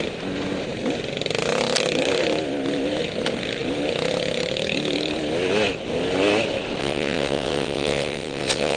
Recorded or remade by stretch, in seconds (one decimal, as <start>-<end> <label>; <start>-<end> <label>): 0.0-6.8 recorded; 6.8-8.8 remade